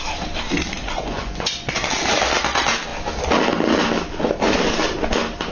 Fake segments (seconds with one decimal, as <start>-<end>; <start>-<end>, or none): 0.8-1.7